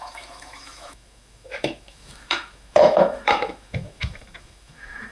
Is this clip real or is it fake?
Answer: fake